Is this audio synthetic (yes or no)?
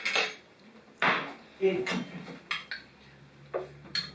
no